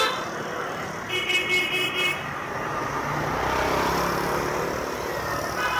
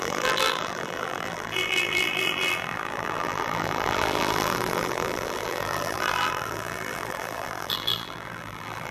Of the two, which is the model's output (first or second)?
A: second